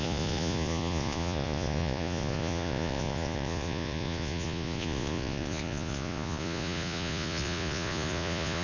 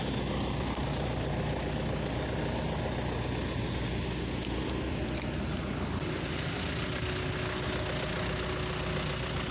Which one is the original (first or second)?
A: second